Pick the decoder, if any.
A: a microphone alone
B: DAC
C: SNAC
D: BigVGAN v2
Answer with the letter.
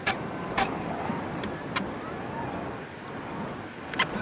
A